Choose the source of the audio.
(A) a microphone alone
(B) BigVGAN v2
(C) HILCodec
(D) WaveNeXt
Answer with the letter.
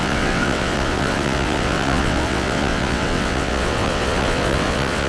D